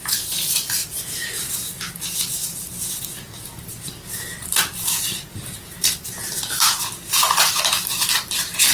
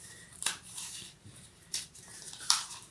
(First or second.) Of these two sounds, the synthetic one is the second